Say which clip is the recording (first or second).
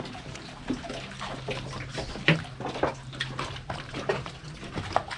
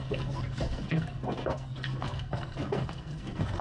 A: first